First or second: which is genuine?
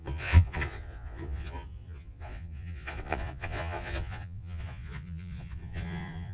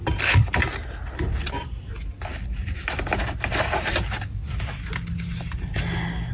second